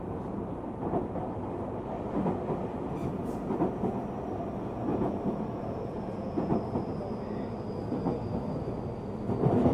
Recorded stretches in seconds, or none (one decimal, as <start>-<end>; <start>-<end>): 0.0-3.0; 3.5-4.9; 6.6-9.7